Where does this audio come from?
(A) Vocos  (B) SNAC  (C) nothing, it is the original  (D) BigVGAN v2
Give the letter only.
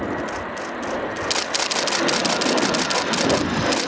C